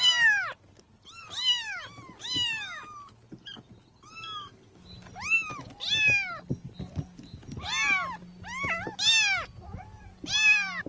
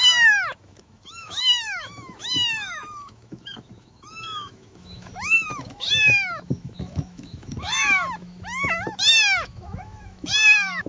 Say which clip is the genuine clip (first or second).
first